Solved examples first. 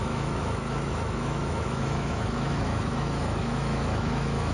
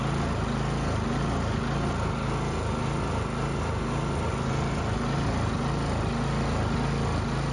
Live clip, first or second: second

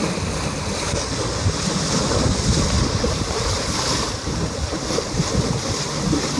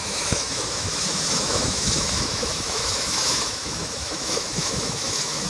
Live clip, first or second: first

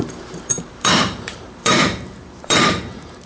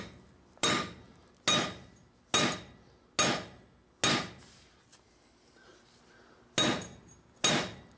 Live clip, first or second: second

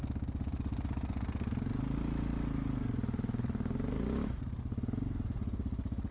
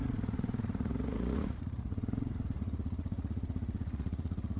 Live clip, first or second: first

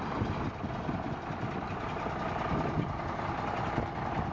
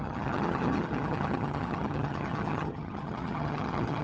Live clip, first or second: first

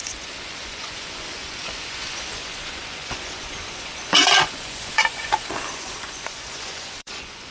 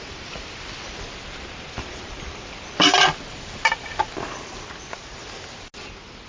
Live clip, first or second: second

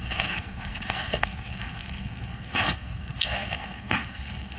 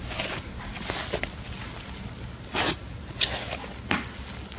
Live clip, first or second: second